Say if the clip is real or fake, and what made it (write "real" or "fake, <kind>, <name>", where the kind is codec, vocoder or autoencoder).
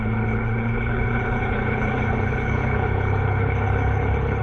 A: fake, codec, HILCodec